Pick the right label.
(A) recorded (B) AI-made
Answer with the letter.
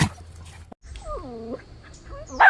A